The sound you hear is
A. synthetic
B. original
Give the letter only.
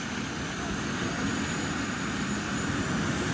B